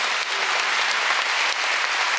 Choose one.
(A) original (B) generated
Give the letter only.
A